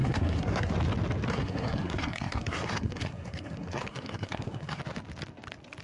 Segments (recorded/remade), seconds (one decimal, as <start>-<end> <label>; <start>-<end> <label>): 0.0-0.7 remade; 0.7-1.3 recorded; 1.3-4.8 remade; 4.8-5.8 recorded